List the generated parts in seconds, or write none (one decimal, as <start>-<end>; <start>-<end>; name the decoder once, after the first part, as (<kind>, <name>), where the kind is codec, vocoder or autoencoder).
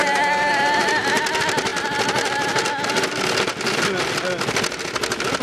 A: none